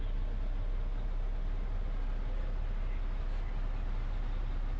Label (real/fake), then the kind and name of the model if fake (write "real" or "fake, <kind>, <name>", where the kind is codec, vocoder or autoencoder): real